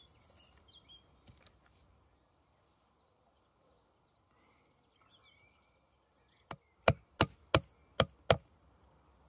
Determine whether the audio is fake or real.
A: real